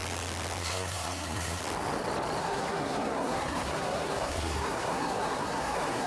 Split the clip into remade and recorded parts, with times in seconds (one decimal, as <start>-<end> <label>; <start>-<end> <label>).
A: 0.0-0.6 recorded; 0.6-1.6 remade; 1.6-2.4 recorded; 2.4-6.1 remade

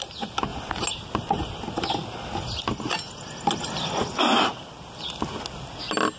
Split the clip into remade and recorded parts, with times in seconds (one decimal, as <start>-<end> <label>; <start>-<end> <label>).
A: 0.0-6.2 recorded